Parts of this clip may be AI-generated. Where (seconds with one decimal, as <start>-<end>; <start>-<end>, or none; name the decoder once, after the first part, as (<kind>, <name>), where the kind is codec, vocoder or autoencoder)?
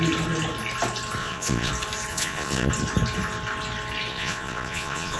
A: 1.2-1.7 (vocoder, Vocos); 2.1-2.7; 4.1-5.2